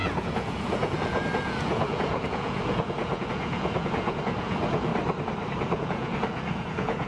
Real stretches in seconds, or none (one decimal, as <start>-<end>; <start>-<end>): 4.9-5.6